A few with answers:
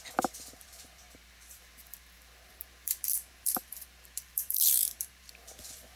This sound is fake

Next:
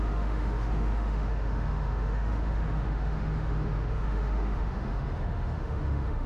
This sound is fake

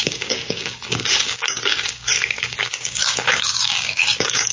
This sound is fake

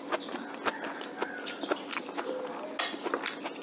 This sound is real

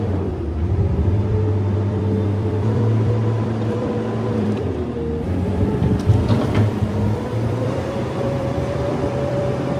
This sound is fake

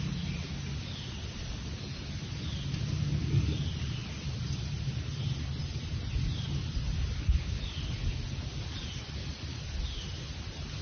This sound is real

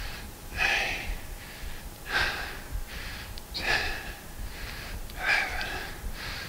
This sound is real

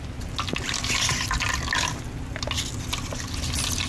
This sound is real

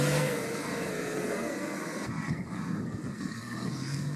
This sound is fake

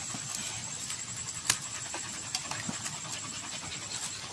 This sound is real